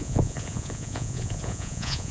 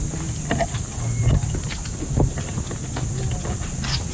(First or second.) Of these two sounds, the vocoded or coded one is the first